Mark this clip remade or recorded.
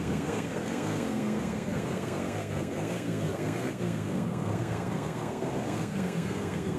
remade